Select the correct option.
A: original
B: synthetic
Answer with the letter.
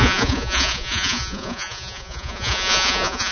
B